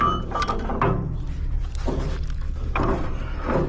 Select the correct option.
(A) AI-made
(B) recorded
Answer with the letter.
B